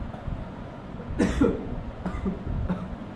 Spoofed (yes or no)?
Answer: yes